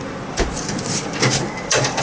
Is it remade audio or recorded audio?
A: recorded